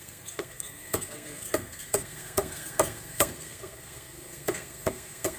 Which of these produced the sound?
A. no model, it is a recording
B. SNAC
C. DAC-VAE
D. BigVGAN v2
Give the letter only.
B